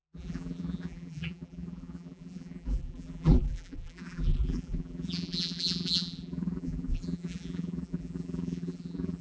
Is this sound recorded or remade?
remade